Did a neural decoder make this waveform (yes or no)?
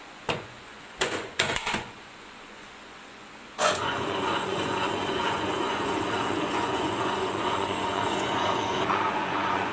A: yes